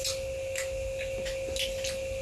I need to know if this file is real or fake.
real